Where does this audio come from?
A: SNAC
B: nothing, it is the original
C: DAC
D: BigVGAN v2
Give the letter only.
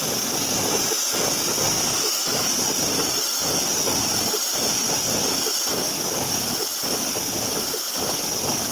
B